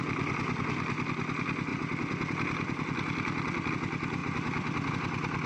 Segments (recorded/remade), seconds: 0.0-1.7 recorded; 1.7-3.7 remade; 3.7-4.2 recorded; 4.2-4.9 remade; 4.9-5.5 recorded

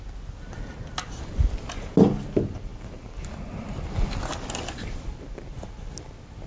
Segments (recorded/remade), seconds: 0.0-2.7 recorded; 2.7-5.2 remade; 5.2-6.5 recorded

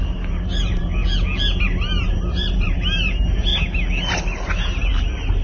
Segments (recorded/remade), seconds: 0.0-1.0 remade; 1.0-1.6 recorded; 1.6-3.5 remade; 3.5-4.2 recorded; 4.2-5.4 remade

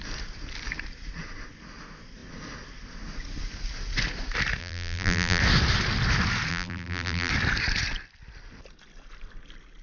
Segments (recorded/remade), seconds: 0.0-4.6 recorded; 4.6-5.4 remade; 5.4-6.5 recorded; 6.5-7.3 remade; 7.3-9.8 recorded

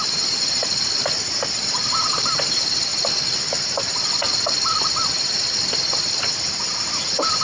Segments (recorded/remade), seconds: 0.0-0.6 remade; 0.6-1.5 recorded; 1.5-2.9 remade; 2.9-6.6 recorded; 6.6-7.4 remade

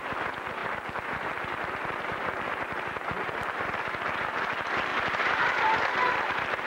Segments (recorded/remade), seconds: 0.0-0.6 recorded; 0.6-3.3 remade; 3.3-4.9 recorded; 4.9-5.5 remade; 5.5-6.7 recorded

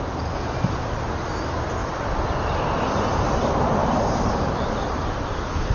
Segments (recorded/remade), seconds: 0.0-3.8 recorded; 3.8-4.4 remade; 4.4-5.7 recorded